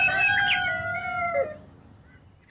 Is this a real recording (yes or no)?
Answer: yes